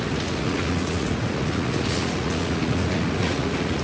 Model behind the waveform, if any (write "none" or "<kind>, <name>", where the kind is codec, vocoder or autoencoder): vocoder, Vocos